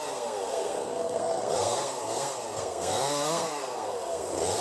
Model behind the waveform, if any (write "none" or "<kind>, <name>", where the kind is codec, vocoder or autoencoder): codec, SNAC